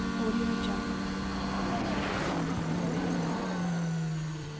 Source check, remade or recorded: remade